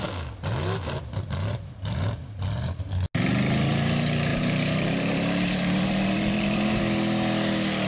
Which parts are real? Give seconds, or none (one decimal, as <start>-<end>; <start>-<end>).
0.0-1.5; 2.2-4.3; 6.8-7.9